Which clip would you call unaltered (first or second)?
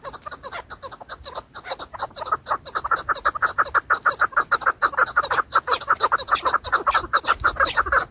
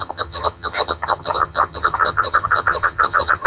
first